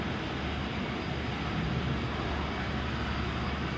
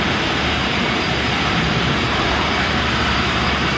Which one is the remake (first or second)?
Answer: second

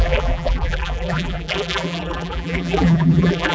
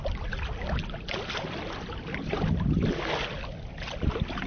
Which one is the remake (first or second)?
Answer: first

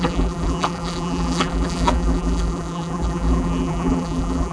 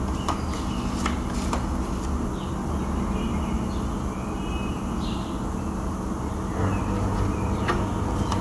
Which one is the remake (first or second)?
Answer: first